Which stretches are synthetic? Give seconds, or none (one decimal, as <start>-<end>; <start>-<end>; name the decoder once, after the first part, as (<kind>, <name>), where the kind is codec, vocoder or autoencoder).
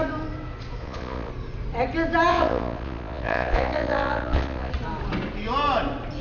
0.8-1.3 (vocoder, Vocos); 2.3-4.7